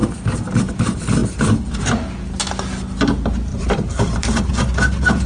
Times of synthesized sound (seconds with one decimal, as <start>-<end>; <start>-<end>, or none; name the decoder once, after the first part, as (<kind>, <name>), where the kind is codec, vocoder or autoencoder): 1.2-1.7 (vocoder, BigVGAN v2); 3.5-4.5